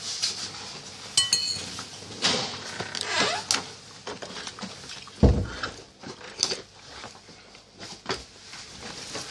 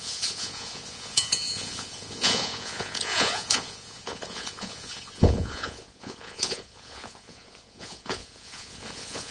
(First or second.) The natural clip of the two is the first